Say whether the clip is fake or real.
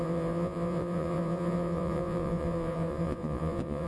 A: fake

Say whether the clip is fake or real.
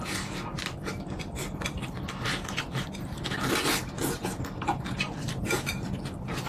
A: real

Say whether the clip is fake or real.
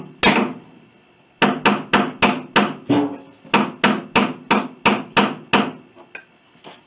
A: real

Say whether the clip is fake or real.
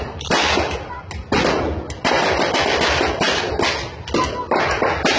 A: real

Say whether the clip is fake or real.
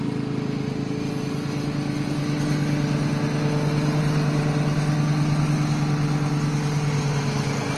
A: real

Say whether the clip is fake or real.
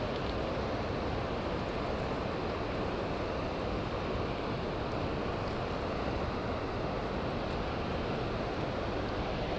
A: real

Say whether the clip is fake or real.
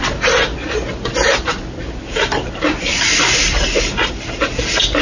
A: real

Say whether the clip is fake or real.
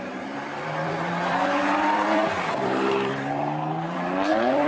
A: fake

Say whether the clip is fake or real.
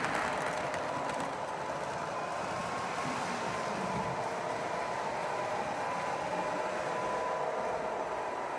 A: real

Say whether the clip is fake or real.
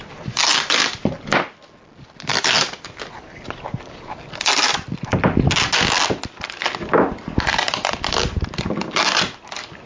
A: real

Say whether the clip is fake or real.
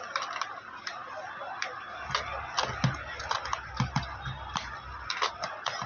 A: real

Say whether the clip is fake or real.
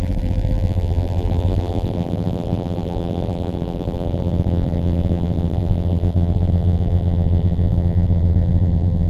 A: fake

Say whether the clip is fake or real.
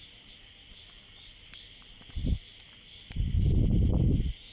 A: real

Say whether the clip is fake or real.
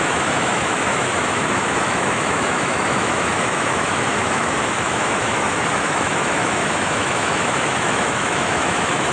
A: fake